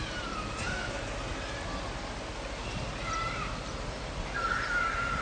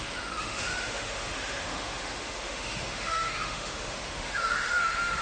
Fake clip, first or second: second